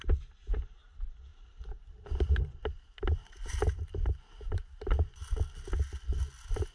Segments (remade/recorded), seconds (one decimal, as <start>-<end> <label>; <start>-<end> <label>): 0.0-1.3 recorded; 1.3-5.3 remade; 5.3-6.7 recorded